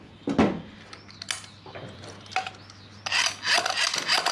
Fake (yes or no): no